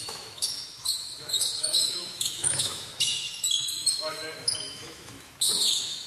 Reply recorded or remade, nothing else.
remade